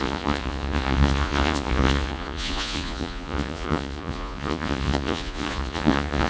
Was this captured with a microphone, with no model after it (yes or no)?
no